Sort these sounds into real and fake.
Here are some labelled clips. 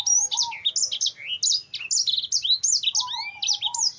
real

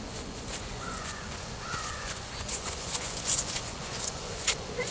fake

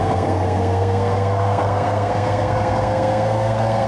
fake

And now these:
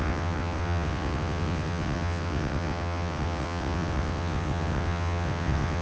fake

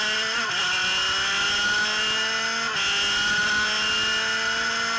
real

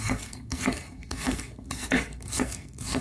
fake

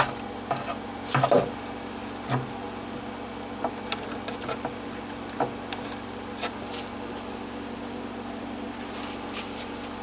real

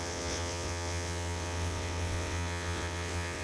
fake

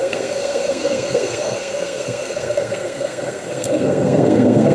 fake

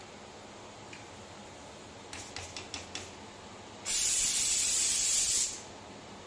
real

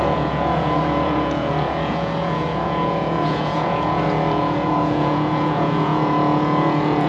fake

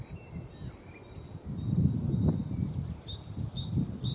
real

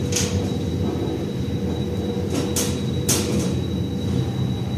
real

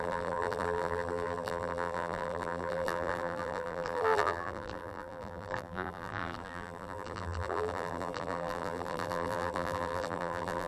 fake